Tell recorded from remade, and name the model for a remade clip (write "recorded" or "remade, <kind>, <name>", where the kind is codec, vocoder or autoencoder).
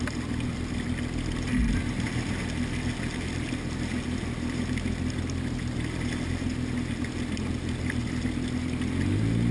recorded